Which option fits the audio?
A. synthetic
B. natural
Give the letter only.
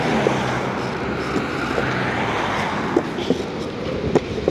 B